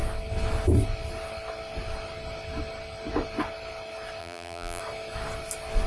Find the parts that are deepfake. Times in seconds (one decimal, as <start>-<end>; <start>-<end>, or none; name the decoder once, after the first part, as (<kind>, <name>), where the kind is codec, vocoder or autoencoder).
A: 4.2-4.8 (vocoder, BigVGAN v2)